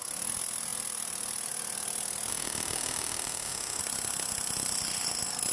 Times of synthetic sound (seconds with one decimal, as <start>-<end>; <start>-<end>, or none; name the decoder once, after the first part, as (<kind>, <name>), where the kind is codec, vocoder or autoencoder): 2.3-3.8 (autoencoder, DAC-VAE)